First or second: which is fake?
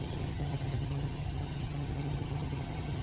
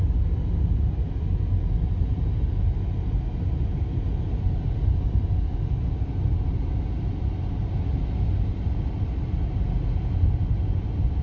first